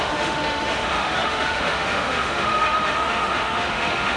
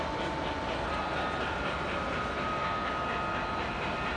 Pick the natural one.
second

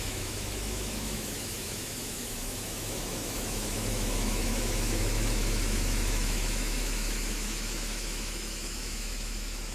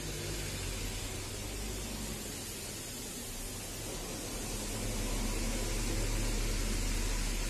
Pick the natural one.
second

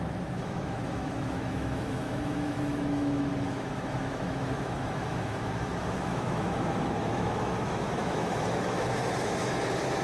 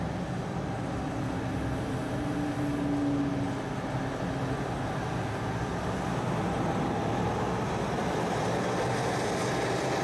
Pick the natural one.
second